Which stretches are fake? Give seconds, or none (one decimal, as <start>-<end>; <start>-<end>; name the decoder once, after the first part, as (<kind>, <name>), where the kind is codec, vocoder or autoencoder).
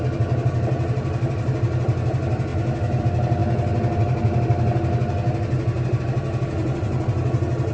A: none